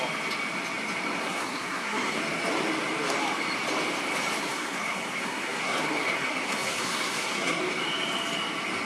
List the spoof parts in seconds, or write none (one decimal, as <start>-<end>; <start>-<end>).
1.2-2.2; 4.4-7.6